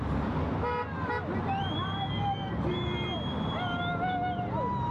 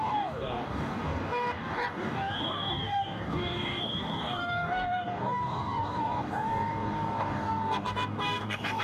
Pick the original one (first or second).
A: first